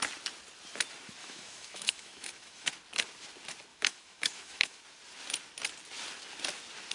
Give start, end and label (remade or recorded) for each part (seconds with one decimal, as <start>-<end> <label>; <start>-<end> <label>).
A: 0.0-1.2 recorded; 1.2-2.7 remade; 2.7-3.7 recorded; 3.7-4.8 remade; 4.8-6.9 recorded